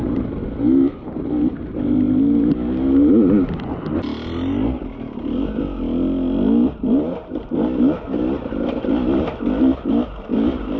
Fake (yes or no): no